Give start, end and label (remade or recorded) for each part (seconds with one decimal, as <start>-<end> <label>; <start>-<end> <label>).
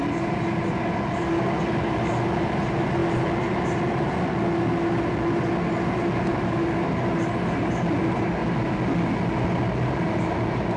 0.0-10.8 recorded